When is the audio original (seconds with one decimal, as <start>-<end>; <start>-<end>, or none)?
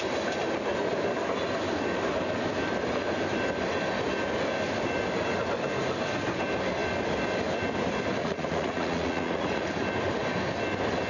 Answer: 0.0-8.2; 9.7-11.1